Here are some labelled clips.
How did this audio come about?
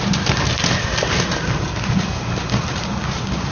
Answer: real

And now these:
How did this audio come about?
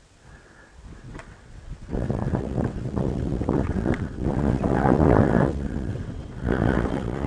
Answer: fake